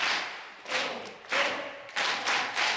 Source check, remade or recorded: recorded